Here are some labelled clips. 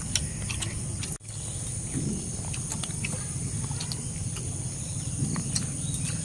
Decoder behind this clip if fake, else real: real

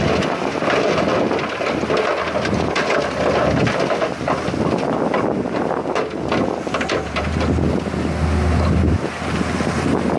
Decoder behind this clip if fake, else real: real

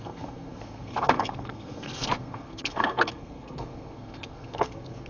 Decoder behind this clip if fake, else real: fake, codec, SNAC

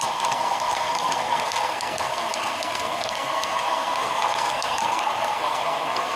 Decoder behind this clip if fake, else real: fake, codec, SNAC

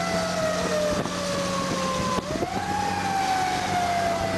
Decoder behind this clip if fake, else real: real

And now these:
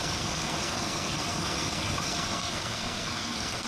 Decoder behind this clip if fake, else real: fake, codec, SNAC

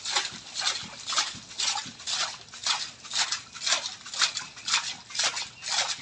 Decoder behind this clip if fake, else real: real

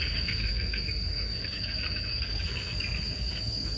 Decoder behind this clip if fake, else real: fake, codec, SNAC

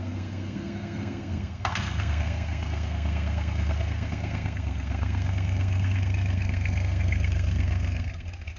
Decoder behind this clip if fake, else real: fake, codec, SNAC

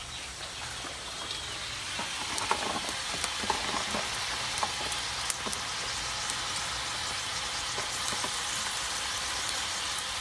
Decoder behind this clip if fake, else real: real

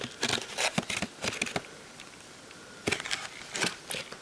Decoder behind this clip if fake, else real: real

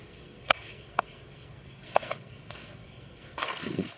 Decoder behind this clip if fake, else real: fake, codec, SNAC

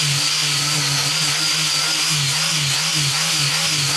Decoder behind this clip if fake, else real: real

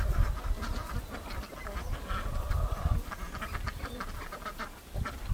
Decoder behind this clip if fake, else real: real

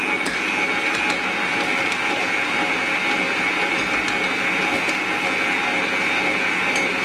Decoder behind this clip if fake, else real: real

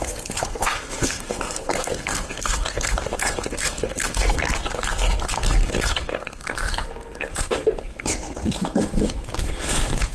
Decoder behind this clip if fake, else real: fake, codec, SNAC